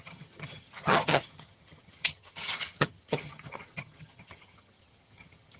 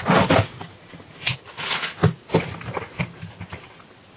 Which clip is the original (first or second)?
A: second